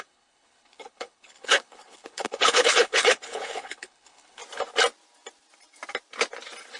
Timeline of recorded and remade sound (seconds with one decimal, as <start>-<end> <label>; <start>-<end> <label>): 0.0-4.4 remade; 4.4-6.8 recorded